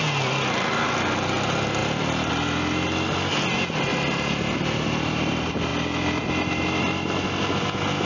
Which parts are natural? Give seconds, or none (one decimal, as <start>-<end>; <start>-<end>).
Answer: 0.0-8.1